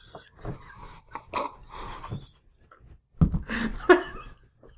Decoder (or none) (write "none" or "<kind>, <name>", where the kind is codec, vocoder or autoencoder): none